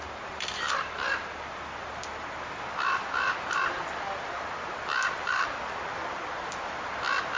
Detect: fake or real real